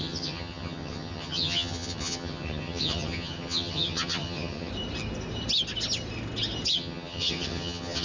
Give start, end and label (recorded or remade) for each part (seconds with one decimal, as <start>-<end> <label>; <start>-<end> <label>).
0.0-4.7 remade; 4.7-6.7 recorded; 6.7-8.0 remade